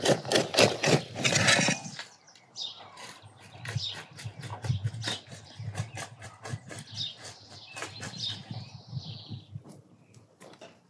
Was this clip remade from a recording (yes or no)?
no